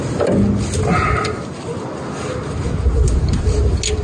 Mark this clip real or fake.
real